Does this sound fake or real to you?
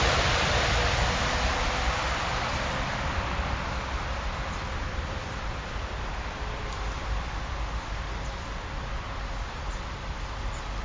fake